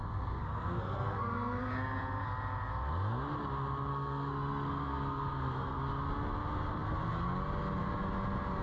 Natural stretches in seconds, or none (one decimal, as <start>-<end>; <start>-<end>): 1.7-3.9; 5.8-8.6